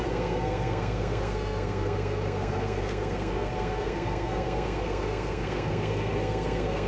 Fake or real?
fake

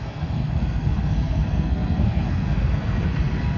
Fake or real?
fake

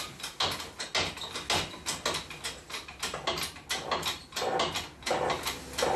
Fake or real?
real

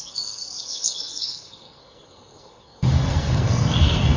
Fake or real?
fake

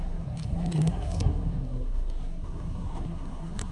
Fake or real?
fake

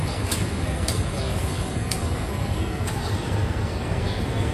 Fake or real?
fake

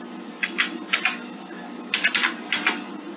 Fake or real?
real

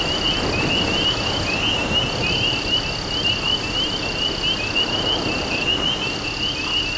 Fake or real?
real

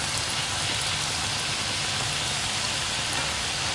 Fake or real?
real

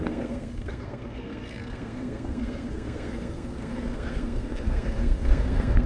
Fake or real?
fake